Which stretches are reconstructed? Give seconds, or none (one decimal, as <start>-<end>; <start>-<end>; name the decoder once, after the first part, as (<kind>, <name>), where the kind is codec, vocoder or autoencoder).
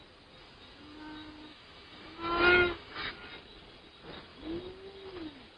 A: 1.5-3.1 (autoencoder, DAC-VAE)